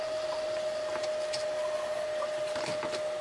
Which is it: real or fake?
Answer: real